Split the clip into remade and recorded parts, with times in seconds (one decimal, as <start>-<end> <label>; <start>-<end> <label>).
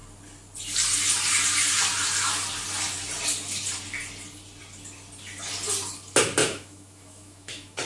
0.0-6.4 recorded; 6.4-7.9 remade